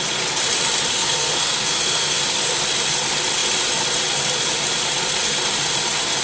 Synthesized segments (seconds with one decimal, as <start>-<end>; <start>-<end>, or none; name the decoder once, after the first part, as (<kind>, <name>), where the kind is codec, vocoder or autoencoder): 0.9-2.2 (codec, SNAC)